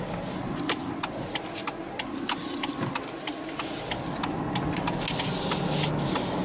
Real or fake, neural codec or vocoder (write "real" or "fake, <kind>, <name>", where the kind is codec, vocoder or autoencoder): real